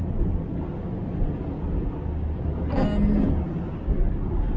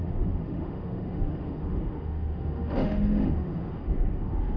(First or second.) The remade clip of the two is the second